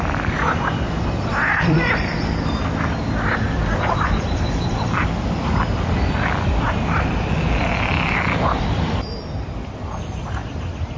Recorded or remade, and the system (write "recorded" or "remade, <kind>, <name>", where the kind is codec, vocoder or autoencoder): remade, vocoder, BigVGAN v2